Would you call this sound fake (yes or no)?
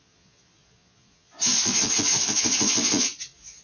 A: yes